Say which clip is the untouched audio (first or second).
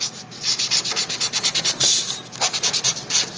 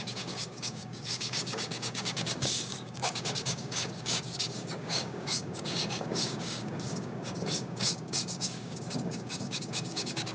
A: first